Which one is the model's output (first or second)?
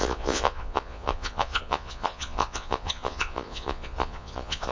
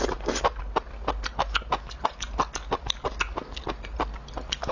first